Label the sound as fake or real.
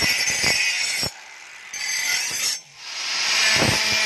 real